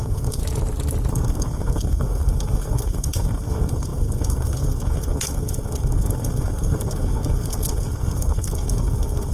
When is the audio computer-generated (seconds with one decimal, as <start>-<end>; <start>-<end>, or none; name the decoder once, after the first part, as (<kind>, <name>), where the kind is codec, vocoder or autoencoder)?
0.0-0.4 (codec, SNAC); 1.1-9.3